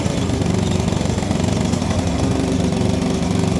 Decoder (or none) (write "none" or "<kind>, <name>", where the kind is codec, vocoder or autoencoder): vocoder, BigVGAN v2